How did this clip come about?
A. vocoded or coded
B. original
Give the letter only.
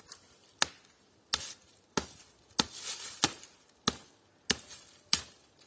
B